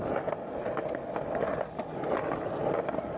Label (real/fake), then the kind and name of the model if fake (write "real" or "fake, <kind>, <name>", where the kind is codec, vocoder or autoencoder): real